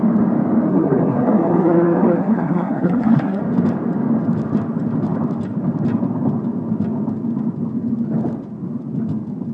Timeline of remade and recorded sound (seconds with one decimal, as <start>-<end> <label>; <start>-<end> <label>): 0.0-0.7 recorded; 0.7-3.4 remade; 3.4-9.5 recorded